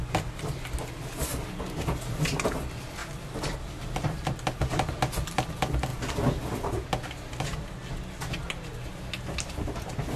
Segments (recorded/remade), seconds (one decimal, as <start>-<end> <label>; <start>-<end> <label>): 0.0-3.0 recorded; 3.0-5.5 remade; 5.5-10.2 recorded